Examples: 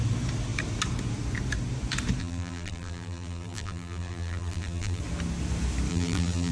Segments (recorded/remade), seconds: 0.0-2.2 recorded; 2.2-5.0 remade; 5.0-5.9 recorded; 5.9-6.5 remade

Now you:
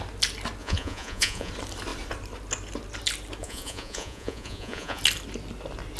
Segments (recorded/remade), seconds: 0.0-0.6 recorded; 0.6-1.5 remade; 1.5-3.4 recorded; 3.4-5.0 remade; 5.0-6.0 recorded

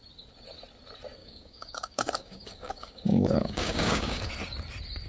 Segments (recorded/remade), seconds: 0.0-1.2 recorded; 1.2-4.3 remade; 4.3-5.1 recorded

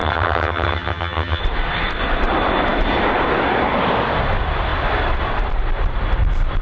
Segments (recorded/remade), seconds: 0.0-1.4 remade; 1.4-6.6 recorded

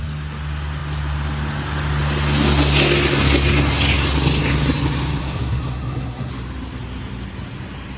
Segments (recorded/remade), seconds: 0.0-5.2 recorded; 5.2-6.3 remade; 6.3-8.0 recorded